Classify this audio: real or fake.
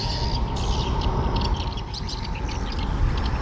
real